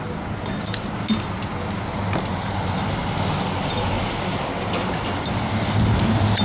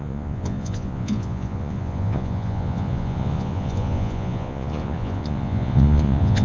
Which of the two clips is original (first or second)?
first